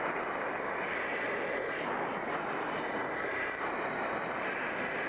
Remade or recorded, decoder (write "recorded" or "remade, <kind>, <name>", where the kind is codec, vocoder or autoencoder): recorded